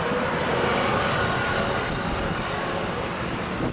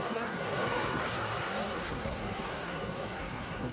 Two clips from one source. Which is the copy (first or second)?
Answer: second